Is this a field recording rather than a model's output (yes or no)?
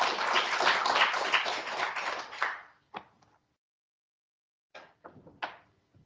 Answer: yes